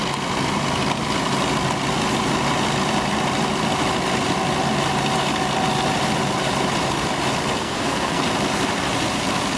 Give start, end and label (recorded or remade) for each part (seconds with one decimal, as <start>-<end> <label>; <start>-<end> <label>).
0.0-7.6 recorded; 7.6-8.2 remade; 8.2-9.6 recorded